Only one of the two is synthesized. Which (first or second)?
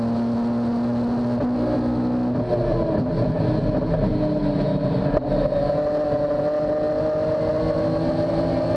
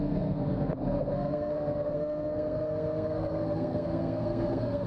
second